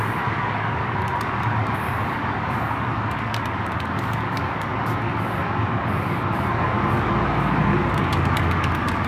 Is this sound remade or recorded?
remade